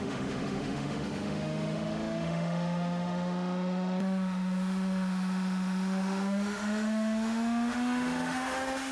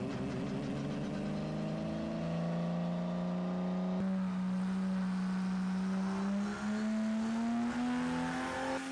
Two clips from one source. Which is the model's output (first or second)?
first